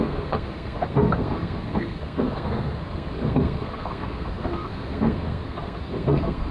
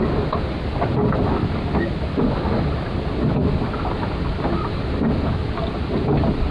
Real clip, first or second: second